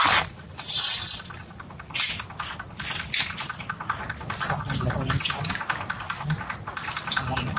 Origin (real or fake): real